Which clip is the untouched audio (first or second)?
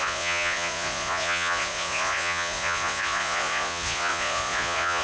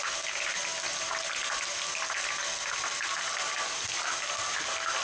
second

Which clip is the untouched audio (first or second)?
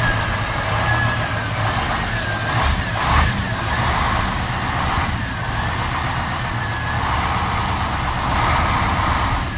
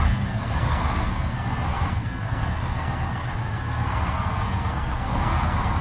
first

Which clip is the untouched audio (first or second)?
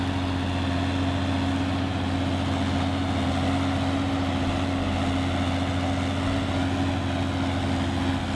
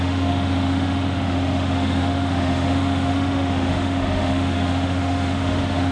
first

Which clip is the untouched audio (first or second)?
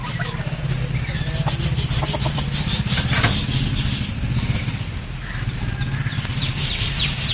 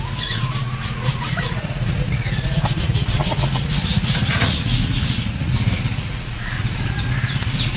first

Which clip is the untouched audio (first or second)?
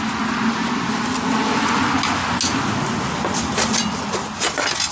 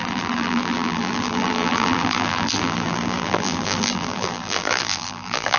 first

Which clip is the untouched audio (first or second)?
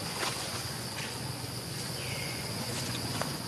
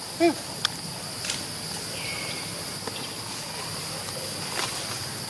second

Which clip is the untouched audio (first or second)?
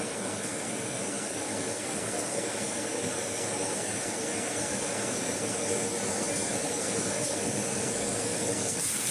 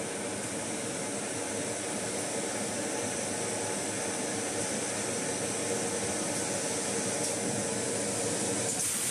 second